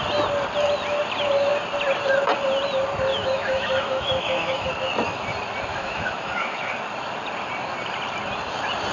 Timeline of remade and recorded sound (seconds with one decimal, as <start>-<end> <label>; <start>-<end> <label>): 0.0-3.1 recorded; 3.1-4.7 remade; 4.7-5.7 recorded; 5.7-6.7 remade; 6.7-8.9 recorded